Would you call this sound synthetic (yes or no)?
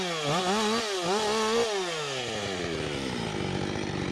no